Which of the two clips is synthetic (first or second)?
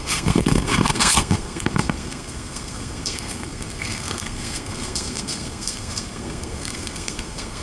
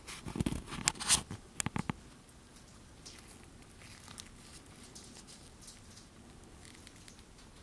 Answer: first